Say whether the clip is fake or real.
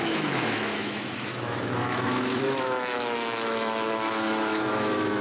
fake